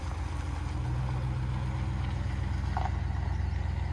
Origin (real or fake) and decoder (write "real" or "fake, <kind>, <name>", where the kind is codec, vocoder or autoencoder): real